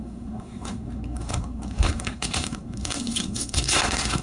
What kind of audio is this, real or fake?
fake